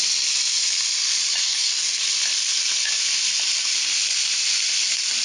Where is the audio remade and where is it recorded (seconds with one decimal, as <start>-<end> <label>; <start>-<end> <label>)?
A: 0.0-1.4 recorded; 1.4-1.9 remade; 1.9-5.2 recorded